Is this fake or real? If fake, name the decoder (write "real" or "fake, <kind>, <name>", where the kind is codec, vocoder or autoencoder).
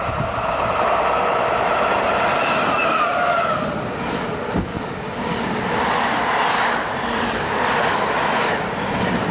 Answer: real